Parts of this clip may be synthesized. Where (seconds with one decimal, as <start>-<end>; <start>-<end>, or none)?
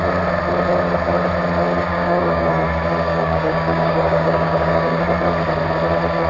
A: 1.9-2.5; 3.1-5.0